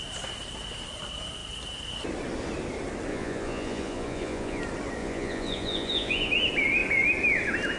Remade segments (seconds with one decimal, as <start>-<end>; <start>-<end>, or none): 3.1-4.6; 5.0-6.3